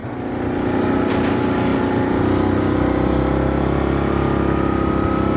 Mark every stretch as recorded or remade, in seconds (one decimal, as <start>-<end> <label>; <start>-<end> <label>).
0.0-5.4 recorded